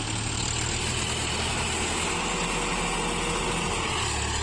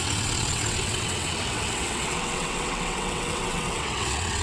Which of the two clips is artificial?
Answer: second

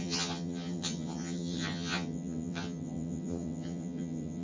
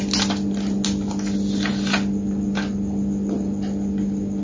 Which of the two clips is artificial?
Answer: first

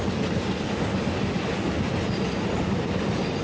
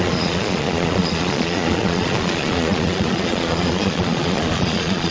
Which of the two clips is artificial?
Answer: second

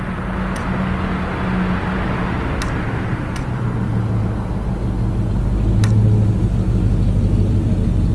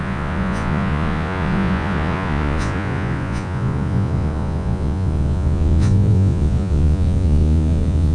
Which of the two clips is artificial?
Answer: second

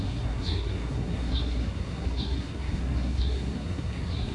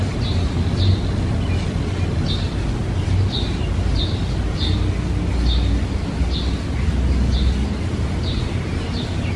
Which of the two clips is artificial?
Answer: first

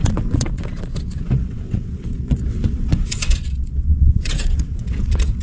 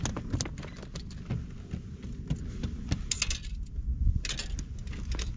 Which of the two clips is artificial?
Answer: first